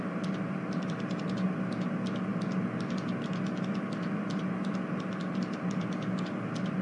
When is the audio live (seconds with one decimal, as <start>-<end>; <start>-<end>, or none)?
0.0-6.8